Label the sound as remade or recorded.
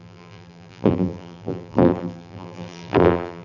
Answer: remade